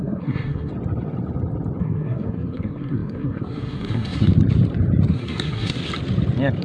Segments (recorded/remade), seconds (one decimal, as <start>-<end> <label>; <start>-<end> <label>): 0.0-0.7 remade; 0.7-1.8 recorded; 1.8-4.3 remade; 4.3-5.1 recorded; 5.1-5.8 remade; 5.8-6.6 recorded